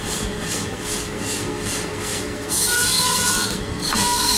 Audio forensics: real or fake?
fake